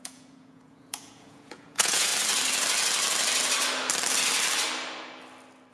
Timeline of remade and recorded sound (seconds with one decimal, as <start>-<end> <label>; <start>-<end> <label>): 0.0-2.1 remade; 2.1-5.7 recorded